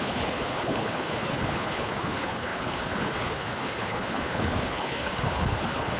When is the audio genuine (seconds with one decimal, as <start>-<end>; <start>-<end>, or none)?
none